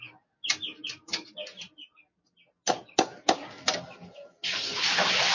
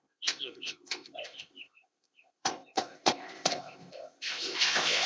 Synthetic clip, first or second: second